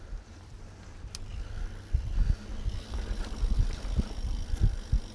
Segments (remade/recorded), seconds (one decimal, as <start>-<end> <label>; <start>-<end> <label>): 0.0-1.3 remade; 1.3-3.2 recorded; 3.2-5.1 remade